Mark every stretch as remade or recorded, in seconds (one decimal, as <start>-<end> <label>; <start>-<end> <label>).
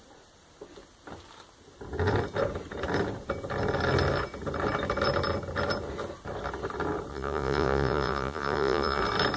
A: 0.0-7.1 recorded; 7.1-9.0 remade; 9.0-9.4 recorded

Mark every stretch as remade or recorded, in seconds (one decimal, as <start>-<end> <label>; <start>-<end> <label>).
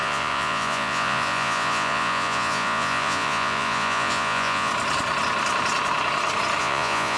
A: 0.0-4.7 remade; 4.7-6.6 recorded; 6.6-7.2 remade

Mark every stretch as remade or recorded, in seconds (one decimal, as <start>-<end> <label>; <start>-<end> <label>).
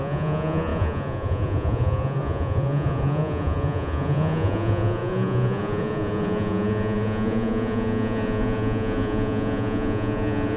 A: 0.0-10.6 remade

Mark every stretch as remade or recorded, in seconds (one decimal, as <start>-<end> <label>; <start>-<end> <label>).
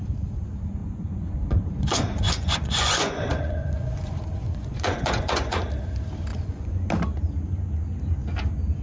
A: 0.0-0.8 recorded; 0.8-5.6 remade; 5.6-6.3 recorded; 6.3-6.9 remade; 6.9-8.8 recorded